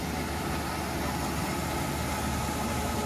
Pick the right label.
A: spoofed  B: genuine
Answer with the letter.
B